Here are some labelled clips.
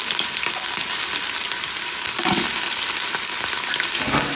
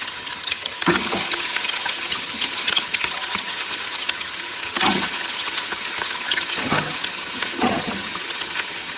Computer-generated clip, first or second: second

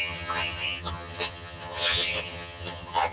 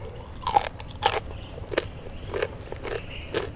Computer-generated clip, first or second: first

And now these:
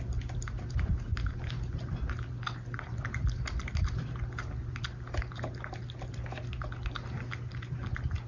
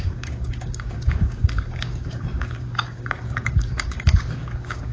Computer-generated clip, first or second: second